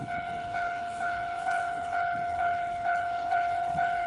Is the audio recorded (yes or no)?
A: no